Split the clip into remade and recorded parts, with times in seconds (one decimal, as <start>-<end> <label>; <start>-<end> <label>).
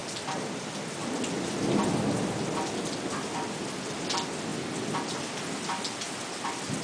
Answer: 0.0-6.8 recorded